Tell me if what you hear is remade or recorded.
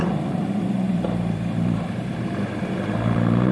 remade